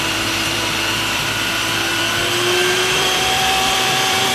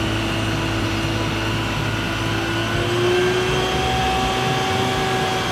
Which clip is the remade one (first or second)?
first